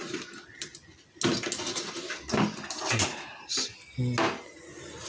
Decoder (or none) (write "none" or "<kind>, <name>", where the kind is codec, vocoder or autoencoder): none